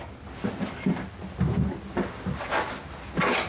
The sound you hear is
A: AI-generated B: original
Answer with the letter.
B